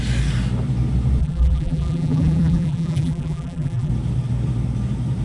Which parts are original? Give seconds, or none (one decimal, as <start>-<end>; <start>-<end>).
0.0-1.2; 3.9-5.2